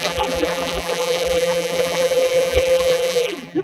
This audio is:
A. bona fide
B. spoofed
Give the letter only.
B